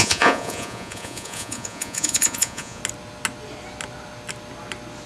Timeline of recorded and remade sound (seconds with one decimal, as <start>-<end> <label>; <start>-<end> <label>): 0.0-2.8 remade; 2.8-5.1 recorded